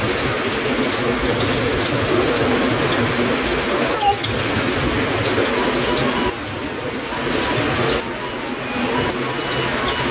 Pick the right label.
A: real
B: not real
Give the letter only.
A